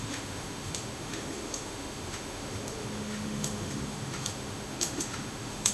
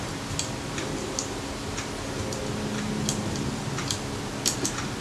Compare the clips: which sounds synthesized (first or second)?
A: first